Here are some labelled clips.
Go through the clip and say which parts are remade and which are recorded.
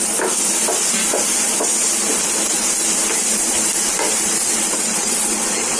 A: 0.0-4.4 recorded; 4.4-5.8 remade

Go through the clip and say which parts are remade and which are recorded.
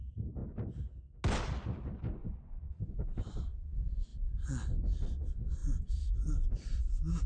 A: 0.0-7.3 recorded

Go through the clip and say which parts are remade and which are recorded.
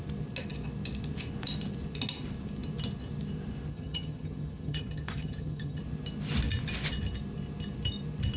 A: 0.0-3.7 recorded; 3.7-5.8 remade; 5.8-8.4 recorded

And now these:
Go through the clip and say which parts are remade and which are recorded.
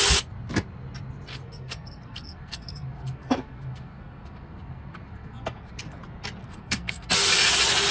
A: 0.0-1.3 recorded; 1.3-6.0 remade; 6.0-6.4 recorded; 6.4-7.1 remade; 7.1-7.9 recorded